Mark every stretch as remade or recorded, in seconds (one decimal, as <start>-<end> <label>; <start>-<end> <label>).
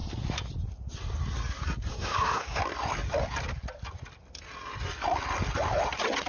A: 0.0-1.9 recorded; 1.9-2.6 remade; 2.6-6.3 recorded